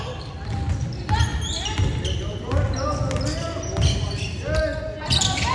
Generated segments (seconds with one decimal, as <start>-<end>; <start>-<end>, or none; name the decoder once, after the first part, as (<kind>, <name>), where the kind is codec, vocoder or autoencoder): none